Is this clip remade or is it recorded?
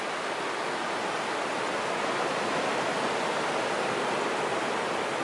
recorded